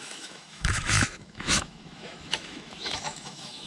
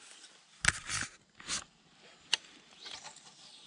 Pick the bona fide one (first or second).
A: second